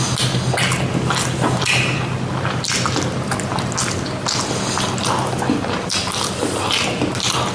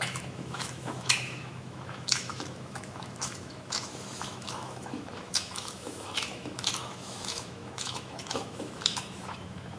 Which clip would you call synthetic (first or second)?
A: second